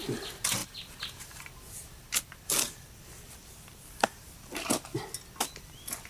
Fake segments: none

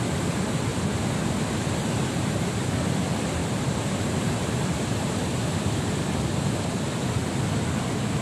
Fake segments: 3.4-5.3 (vocoder, BigVGAN v2)

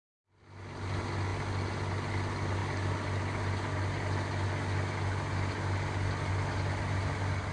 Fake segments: none

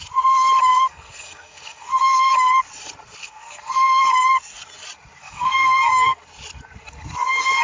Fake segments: 0.7-2.3 (codec, SNAC); 3.2-4.0; 5.2-6.2

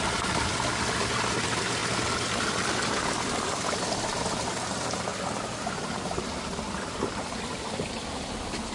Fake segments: none

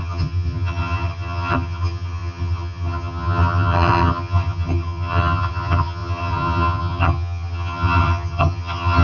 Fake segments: 0.0-9.0 (vocoder, HiFi-GAN)